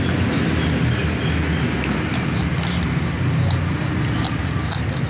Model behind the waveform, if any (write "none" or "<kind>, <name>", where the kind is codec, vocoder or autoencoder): none